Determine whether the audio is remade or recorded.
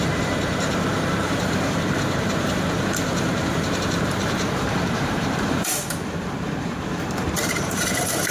remade